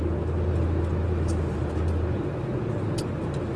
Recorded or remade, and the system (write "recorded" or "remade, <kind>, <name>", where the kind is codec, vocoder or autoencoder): recorded